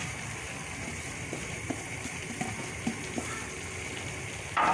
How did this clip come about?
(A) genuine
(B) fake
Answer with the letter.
B